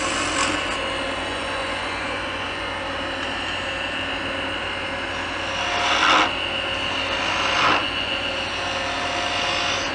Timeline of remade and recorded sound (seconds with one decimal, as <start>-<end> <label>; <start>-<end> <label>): 0.0-1.3 recorded; 1.3-2.7 remade; 2.7-7.8 recorded; 7.8-8.3 remade; 8.3-9.9 recorded